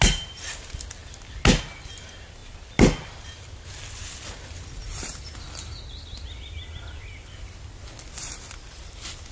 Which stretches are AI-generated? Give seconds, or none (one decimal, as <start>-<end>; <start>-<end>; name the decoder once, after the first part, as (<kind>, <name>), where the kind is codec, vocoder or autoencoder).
none